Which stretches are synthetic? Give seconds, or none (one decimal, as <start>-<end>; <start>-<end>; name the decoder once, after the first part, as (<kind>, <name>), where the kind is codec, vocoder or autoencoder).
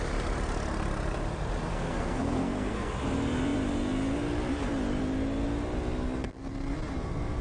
1.7-2.9 (codec, SNAC)